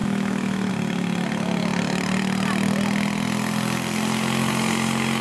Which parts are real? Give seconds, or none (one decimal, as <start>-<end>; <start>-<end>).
0.7-5.2